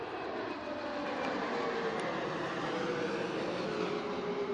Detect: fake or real real